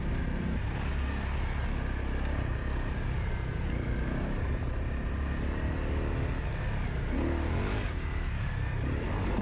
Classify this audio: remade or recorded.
recorded